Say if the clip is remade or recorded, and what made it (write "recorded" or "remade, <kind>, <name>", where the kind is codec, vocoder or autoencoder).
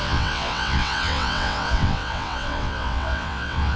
remade, vocoder, WaveNeXt